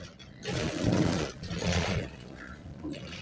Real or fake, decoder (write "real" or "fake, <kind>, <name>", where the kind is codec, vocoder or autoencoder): fake, vocoder, Vocos